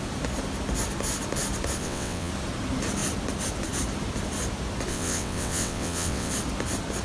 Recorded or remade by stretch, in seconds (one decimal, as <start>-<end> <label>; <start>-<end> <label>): 0.0-1.8 recorded; 1.8-2.3 remade; 2.3-4.9 recorded; 4.9-6.3 remade; 6.3-7.0 recorded